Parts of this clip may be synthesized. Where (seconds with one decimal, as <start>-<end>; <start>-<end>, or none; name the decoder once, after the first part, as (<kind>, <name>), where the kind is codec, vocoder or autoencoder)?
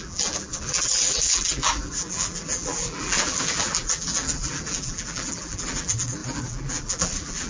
0.0-7.5 (vocoder, BigVGAN v2)